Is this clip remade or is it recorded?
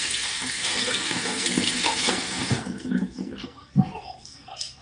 remade